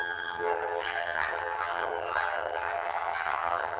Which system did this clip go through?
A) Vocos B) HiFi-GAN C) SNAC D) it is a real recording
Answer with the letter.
B